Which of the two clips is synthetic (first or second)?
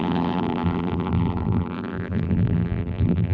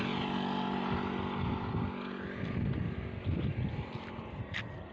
first